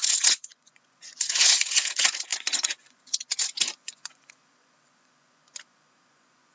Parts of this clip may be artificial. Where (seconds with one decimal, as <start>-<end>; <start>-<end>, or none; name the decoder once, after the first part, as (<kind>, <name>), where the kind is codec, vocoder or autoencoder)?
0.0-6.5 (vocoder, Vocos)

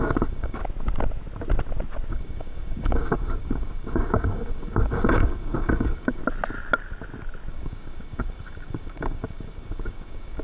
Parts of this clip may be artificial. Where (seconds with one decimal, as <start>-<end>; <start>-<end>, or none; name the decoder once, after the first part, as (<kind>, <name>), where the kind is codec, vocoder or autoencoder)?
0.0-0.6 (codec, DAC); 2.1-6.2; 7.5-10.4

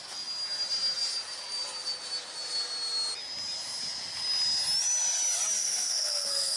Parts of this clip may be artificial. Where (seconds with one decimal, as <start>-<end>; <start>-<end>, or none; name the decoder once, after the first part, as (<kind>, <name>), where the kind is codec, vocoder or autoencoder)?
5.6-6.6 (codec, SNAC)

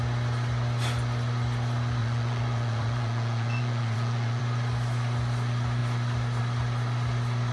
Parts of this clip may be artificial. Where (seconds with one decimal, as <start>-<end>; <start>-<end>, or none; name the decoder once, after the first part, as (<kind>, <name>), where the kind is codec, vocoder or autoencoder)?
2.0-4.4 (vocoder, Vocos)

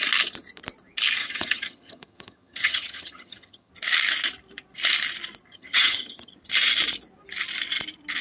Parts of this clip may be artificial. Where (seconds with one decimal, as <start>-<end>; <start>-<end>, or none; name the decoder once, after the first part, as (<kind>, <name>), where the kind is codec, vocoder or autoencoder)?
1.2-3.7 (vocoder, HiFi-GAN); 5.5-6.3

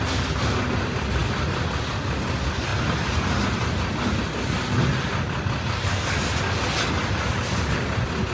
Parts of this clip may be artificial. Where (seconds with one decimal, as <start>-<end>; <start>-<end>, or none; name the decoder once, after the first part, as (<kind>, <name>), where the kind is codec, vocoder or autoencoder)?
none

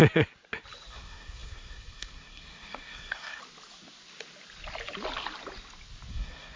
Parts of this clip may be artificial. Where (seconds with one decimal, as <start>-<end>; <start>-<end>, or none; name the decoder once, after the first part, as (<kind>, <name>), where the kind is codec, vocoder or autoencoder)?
0.9-3.4 (codec, SNAC); 6.1-6.6